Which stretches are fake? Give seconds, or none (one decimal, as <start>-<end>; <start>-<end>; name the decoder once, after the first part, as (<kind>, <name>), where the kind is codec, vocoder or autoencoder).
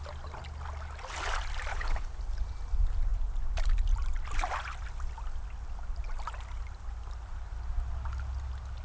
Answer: 1.7-2.2 (codec, HILCodec)